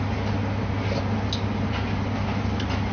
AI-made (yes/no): no